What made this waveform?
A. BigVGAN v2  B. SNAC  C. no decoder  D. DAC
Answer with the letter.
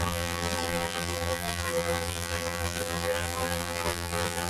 A